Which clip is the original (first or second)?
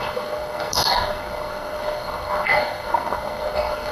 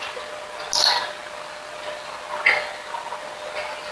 second